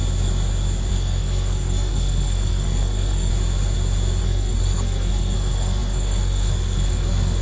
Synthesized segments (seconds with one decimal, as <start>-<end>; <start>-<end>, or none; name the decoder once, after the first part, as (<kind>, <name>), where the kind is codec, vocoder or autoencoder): 0.9-3.3 (codec, SNAC); 4.2-7.4